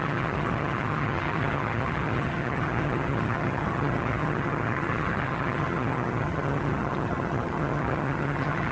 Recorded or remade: remade